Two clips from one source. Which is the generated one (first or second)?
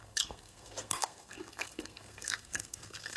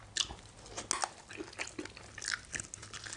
first